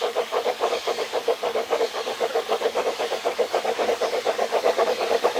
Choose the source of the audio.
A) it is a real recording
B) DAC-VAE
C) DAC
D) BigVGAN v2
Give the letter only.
C